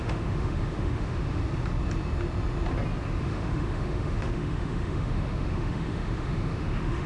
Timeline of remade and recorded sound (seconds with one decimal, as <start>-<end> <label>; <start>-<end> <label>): 0.0-1.4 remade; 1.4-3.2 recorded; 3.2-7.1 remade